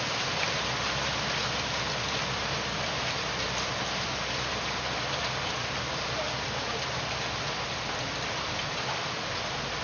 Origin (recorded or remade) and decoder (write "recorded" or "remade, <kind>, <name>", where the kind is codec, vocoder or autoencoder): recorded